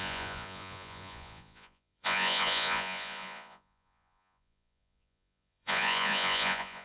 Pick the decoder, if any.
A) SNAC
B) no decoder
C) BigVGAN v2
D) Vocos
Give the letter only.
D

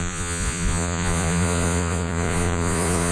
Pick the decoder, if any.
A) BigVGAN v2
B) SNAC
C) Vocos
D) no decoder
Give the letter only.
C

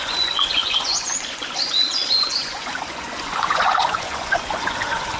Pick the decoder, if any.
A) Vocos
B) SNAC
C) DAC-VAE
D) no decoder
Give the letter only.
A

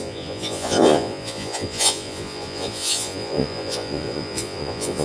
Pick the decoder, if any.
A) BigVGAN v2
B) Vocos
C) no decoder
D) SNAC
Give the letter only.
B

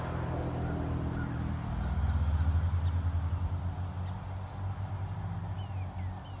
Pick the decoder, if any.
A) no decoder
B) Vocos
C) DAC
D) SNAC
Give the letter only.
A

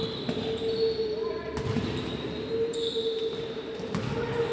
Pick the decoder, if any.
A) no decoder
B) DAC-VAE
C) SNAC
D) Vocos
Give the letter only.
A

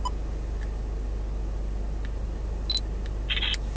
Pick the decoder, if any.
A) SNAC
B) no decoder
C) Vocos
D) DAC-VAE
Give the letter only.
B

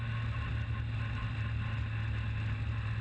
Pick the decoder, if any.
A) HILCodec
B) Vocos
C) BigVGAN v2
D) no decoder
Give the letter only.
D